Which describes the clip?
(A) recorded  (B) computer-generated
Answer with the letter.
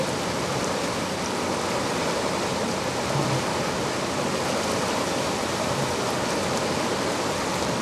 A